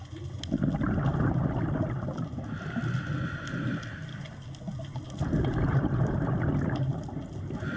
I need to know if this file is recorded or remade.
recorded